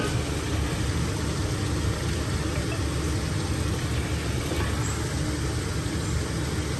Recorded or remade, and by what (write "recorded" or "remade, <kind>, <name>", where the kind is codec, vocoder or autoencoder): recorded